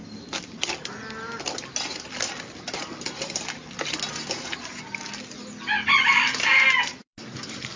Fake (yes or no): no